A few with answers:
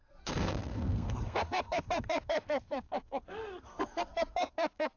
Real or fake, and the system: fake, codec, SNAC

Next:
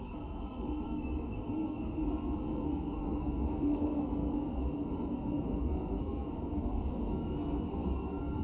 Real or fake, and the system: fake, codec, SNAC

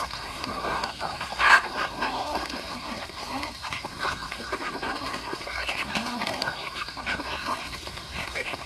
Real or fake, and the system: fake, codec, SNAC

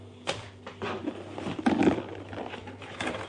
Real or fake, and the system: real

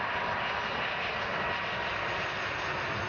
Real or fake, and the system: real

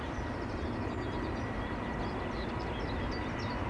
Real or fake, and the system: real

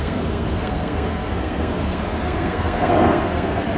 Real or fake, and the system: fake, codec, SNAC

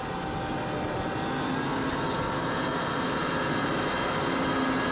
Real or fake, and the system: real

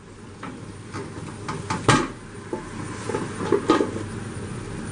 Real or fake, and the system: real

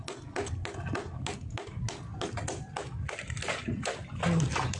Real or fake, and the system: real